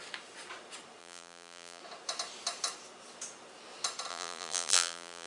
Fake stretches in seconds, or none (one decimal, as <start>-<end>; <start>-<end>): 1.0-1.8; 4.1-5.3